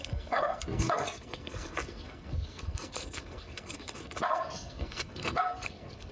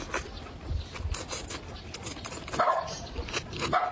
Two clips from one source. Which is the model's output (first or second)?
first